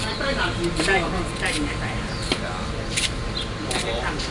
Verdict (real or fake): real